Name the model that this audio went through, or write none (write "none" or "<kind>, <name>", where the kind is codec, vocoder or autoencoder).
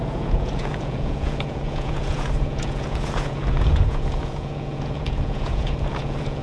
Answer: vocoder, Vocos